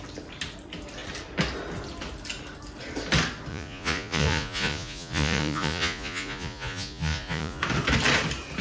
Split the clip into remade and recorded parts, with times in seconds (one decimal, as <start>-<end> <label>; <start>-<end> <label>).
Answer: 0.0-3.5 recorded; 3.5-7.6 remade; 7.6-8.6 recorded